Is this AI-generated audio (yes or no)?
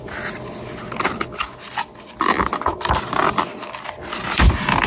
no